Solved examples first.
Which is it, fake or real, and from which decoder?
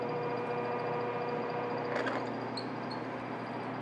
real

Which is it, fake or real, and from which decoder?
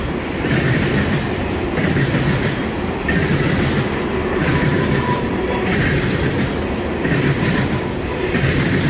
fake, vocoder, BigVGAN v2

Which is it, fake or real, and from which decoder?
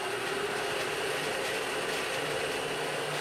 fake, vocoder, BigVGAN v2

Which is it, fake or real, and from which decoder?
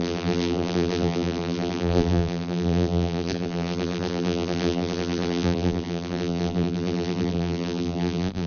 fake, vocoder, BigVGAN v2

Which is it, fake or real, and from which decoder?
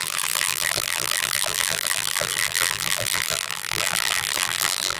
fake, vocoder, BigVGAN v2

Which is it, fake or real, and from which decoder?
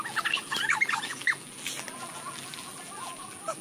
fake, vocoder, BigVGAN v2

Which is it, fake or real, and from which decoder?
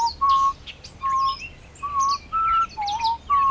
real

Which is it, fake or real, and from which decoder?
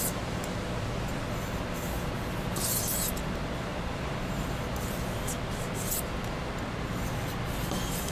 real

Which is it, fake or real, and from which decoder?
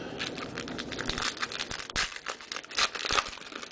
real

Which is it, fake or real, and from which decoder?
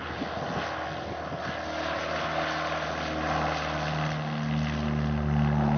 real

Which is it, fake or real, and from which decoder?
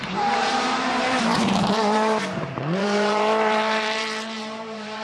fake, vocoder, BigVGAN v2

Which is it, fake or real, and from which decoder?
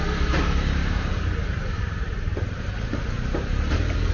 fake, vocoder, BigVGAN v2